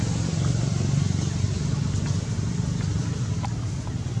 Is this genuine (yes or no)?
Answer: yes